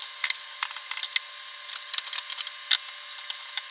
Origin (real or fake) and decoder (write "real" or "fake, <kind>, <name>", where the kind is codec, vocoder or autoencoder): real